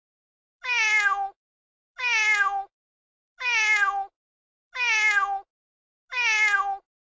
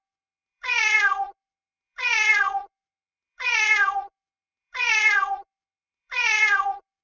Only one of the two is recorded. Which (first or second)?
first